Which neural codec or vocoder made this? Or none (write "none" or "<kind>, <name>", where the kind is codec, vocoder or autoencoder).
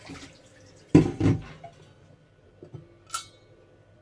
none